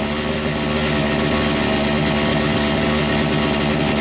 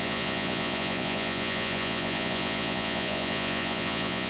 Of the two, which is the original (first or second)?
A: first